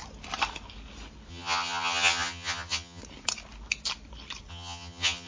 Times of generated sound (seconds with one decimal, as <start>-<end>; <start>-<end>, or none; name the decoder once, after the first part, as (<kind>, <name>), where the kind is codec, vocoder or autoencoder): 1.3-3.0 (vocoder, HiFi-GAN); 4.5-5.3